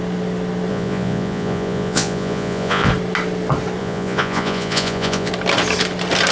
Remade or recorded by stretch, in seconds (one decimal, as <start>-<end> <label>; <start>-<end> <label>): 0.0-0.7 recorded; 0.7-2.9 remade; 2.9-3.8 recorded; 3.8-5.3 remade; 5.3-6.3 recorded